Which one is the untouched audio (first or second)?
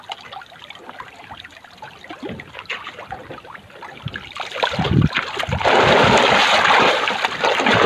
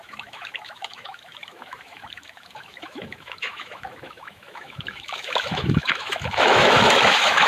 first